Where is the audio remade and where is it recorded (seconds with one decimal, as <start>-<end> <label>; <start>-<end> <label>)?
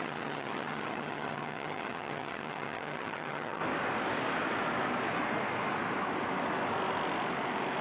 0.0-3.6 remade; 3.6-7.8 recorded